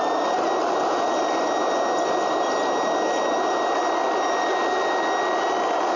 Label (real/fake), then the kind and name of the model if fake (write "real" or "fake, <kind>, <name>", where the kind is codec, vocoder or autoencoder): real